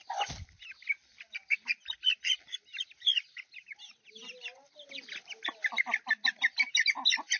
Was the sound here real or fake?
real